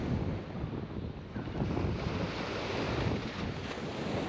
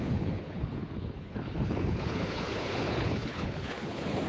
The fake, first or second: second